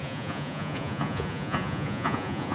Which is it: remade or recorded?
remade